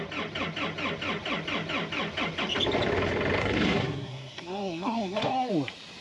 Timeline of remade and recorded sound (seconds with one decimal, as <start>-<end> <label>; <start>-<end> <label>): 0.0-3.4 recorded; 3.4-5.5 remade; 5.5-6.0 recorded